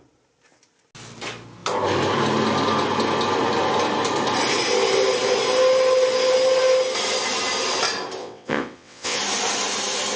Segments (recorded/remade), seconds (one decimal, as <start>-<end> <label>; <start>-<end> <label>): 0.0-8.2 recorded; 8.2-9.2 remade; 9.2-10.2 recorded